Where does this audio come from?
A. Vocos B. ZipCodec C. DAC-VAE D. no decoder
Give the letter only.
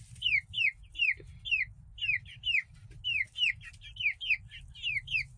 D